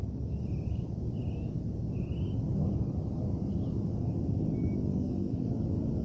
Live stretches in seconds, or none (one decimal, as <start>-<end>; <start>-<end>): 0.0-4.9; 5.5-6.0